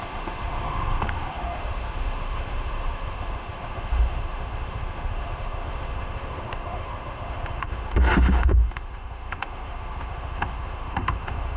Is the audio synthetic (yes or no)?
yes